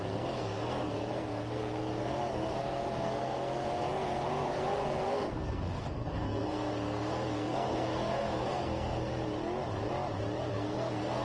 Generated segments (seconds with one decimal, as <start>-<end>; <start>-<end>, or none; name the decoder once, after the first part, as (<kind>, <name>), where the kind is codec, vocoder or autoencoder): 0.0-9.1 (codec, SNAC); 10.5-11.2

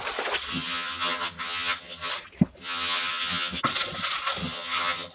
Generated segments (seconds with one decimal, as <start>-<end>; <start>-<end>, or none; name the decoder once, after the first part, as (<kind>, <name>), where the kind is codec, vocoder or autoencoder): 0.5-2.1 (vocoder, HiFi-GAN); 2.6-3.6; 4.4-5.1

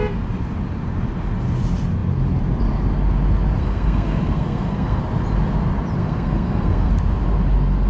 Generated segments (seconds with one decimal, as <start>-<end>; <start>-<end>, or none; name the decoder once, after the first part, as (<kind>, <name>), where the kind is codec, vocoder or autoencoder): 3.6-5.0 (codec, SNAC); 6.0-6.9

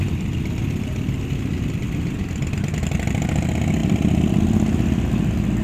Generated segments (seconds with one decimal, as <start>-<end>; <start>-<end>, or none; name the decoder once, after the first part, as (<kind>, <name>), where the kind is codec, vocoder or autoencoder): none

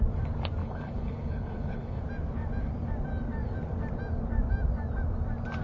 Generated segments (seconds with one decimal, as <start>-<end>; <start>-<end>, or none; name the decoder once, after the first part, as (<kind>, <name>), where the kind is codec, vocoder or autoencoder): 0.6-2.0 (codec, HILCodec)

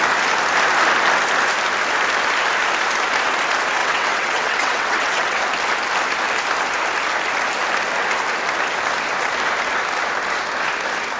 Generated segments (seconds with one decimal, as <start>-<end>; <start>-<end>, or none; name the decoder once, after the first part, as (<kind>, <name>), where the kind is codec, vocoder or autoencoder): 3.8-5.4 (vocoder, WaveNeXt)